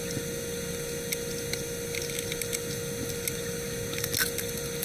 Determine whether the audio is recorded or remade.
recorded